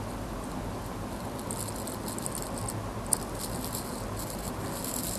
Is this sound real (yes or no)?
yes